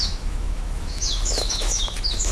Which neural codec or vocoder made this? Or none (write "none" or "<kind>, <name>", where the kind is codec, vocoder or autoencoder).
autoencoder, DAC-VAE